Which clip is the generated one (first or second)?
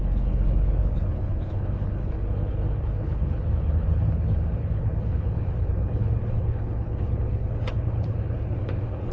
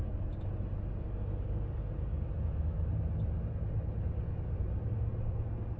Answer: first